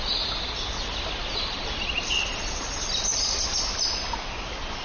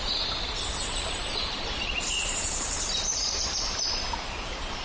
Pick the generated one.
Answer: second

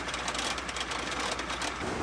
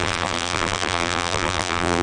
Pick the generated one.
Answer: second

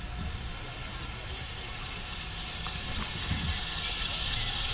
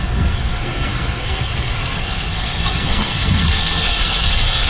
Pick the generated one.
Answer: second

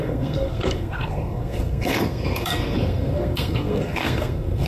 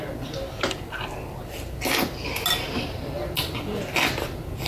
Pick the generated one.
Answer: first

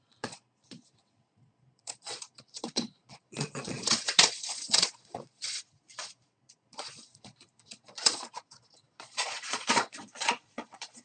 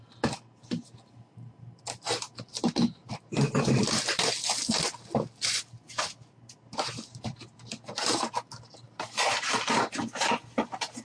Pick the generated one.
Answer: first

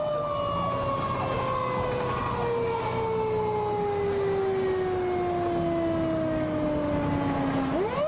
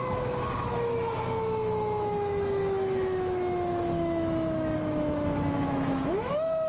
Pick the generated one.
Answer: second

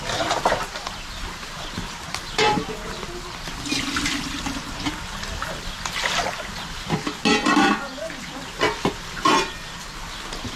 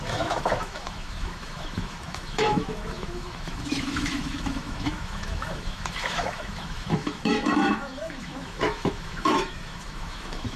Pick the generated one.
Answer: second